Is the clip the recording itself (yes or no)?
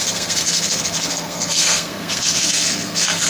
no